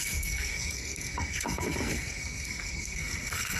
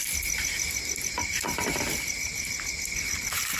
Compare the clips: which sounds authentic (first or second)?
second